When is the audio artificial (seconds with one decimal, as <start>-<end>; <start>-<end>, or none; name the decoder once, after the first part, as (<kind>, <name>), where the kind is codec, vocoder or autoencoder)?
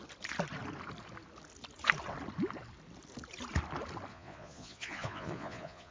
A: 4.1-5.9 (vocoder, Vocos)